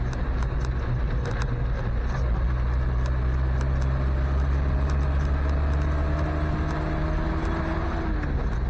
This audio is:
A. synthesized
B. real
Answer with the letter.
B